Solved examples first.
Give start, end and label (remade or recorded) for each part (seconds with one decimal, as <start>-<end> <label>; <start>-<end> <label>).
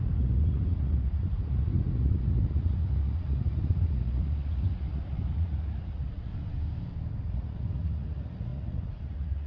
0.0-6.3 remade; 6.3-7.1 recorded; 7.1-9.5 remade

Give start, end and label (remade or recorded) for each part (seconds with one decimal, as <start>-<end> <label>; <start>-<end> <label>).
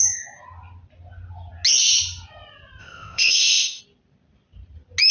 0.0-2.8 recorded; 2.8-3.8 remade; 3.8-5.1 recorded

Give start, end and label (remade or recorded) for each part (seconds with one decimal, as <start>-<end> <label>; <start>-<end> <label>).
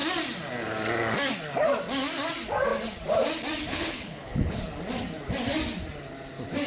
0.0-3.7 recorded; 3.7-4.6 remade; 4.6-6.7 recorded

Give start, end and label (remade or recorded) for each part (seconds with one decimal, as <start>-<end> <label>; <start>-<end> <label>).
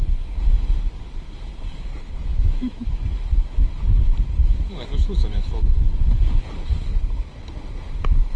0.0-2.3 recorded; 2.3-2.9 remade; 2.9-4.4 recorded; 4.4-5.5 remade; 5.5-8.4 recorded